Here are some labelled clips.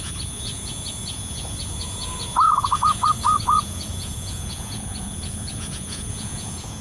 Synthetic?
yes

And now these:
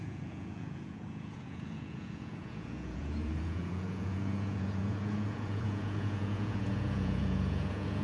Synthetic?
yes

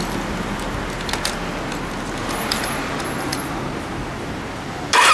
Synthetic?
no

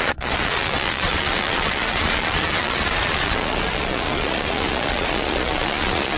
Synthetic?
yes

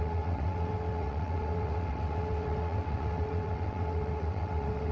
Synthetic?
yes